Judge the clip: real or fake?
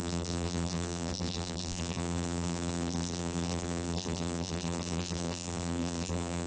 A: fake